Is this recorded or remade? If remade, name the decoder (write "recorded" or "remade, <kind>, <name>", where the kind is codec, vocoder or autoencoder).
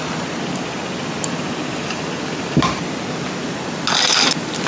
recorded